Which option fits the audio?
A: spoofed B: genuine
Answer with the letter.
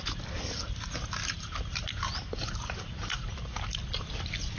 B